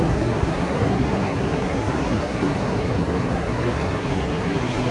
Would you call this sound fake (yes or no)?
yes